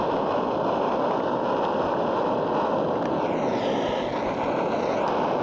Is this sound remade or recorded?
recorded